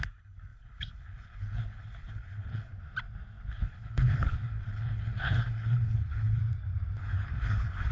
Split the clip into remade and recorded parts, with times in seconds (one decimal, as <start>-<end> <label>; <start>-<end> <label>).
0.0-2.7 remade; 2.7-3.5 recorded; 3.5-6.4 remade; 6.4-7.0 recorded; 7.0-7.9 remade